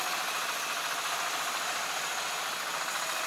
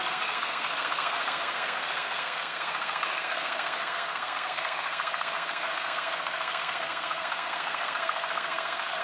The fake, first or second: second